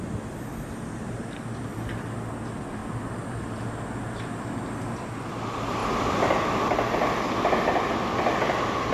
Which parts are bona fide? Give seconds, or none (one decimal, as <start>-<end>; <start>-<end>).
0.0-2.8; 3.4-5.8; 6.6-8.9